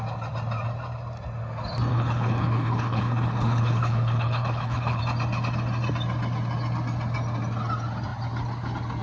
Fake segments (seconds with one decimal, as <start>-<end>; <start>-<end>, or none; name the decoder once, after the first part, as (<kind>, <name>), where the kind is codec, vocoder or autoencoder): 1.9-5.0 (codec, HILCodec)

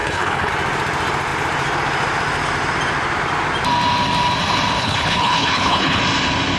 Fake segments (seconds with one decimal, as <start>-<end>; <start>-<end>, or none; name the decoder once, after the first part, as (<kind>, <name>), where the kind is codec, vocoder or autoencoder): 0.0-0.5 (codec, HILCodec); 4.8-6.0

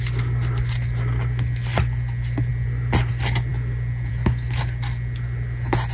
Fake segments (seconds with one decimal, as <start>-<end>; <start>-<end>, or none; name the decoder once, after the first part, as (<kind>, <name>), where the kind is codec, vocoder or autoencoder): none

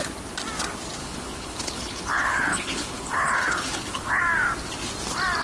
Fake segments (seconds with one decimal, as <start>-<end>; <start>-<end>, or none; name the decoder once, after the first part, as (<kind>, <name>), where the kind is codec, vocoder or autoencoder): 1.0-4.2 (codec, HILCodec)